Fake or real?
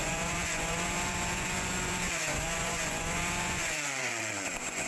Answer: fake